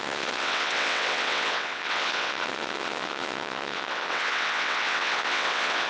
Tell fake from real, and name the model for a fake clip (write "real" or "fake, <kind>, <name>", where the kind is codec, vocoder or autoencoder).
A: fake, vocoder, WaveNeXt